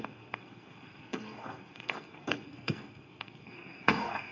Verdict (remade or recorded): remade